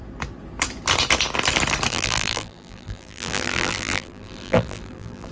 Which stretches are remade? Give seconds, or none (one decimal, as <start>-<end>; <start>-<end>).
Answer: 1.9-5.3